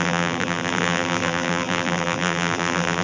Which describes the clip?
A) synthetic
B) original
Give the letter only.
A